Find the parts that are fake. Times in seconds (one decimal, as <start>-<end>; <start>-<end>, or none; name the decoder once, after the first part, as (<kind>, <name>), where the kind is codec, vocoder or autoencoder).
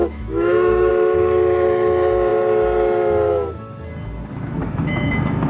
0.0-0.9 (autoencoder, DAC-VAE); 4.6-5.1